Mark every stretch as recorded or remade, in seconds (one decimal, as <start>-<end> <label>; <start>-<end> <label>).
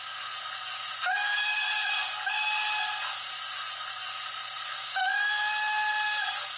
0.0-6.6 recorded